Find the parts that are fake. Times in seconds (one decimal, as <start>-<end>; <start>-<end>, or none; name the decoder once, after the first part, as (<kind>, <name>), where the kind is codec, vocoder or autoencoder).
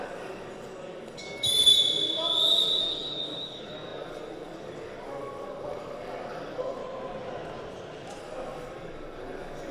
0.0-1.7 (codec, DAC); 2.8-6.8; 8.2-9.7